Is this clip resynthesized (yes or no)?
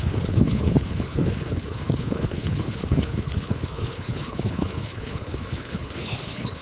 yes